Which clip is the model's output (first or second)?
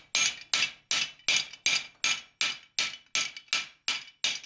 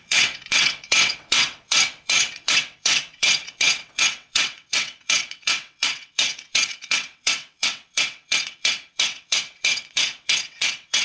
second